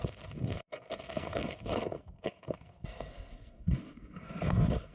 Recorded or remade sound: remade